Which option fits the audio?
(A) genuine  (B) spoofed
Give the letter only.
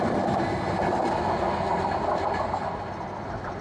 A